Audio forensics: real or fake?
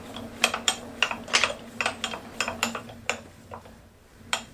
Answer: real